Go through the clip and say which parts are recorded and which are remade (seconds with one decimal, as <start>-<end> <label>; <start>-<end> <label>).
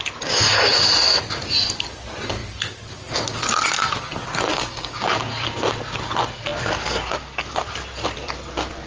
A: 0.0-4.5 recorded; 4.5-5.1 remade; 5.1-8.9 recorded